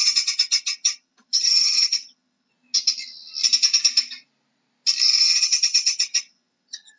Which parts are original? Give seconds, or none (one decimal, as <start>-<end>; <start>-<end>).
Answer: 2.5-5.2